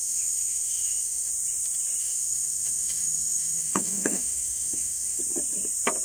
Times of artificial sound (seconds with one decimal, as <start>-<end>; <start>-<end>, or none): 0.0-1.3; 2.0-5.2